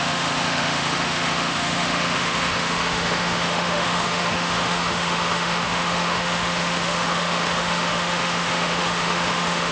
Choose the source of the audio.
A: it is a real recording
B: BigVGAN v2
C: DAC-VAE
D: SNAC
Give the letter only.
C